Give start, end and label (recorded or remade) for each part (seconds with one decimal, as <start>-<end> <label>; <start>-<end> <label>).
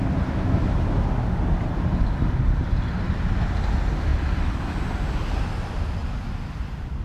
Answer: 0.0-4.1 recorded; 4.1-4.7 remade; 4.7-7.0 recorded